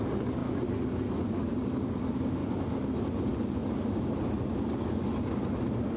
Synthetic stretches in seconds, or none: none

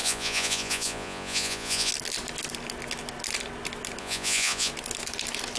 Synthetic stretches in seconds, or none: 0.0-1.9 (vocoder, Vocos); 4.0-4.7

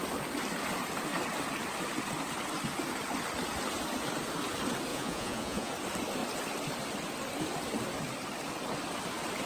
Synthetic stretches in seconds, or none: 4.9-5.7 (vocoder, Vocos)